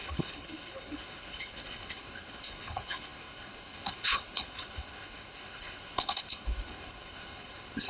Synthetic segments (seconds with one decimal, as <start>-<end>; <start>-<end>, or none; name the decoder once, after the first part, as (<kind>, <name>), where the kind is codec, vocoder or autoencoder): 0.0-7.9 (codec, HILCodec)